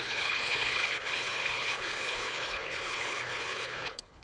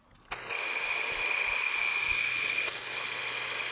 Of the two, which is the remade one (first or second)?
first